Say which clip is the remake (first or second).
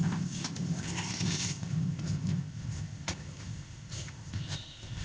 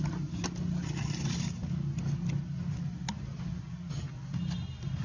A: first